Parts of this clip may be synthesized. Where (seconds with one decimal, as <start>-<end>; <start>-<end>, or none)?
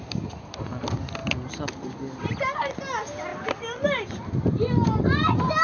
none